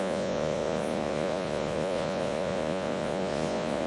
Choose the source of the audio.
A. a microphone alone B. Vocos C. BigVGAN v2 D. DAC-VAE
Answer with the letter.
B